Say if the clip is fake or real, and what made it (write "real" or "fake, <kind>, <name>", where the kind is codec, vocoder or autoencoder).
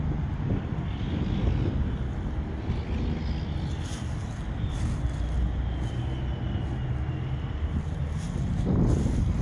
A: real